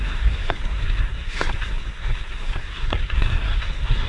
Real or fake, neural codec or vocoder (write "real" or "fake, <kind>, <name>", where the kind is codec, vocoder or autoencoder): fake, codec, SNAC